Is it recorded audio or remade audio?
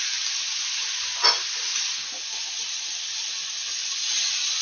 recorded